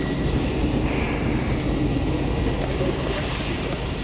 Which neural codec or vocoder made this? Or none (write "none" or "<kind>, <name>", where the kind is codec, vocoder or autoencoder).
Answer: none